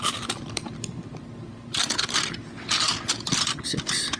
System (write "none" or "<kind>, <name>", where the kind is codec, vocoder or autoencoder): none